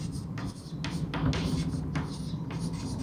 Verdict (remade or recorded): recorded